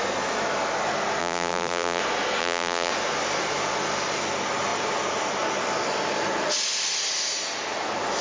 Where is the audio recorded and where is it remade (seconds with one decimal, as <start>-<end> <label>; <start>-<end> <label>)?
0.0-1.2 recorded; 1.2-2.0 remade; 2.0-2.4 recorded; 2.4-2.9 remade; 2.9-8.2 recorded